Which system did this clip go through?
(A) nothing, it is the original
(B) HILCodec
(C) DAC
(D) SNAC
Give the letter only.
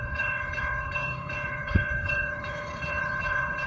B